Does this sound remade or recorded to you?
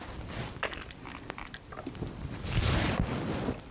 recorded